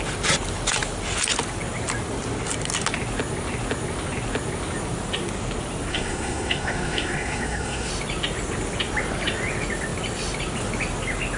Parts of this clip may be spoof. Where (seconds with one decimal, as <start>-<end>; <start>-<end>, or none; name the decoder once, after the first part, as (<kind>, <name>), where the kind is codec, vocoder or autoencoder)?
5.9-7.9 (codec, SNAC)